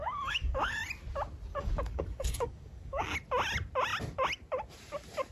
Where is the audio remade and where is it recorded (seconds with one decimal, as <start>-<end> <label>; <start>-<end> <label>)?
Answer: 0.0-0.8 remade; 0.8-1.5 recorded; 1.5-3.0 remade; 3.0-5.3 recorded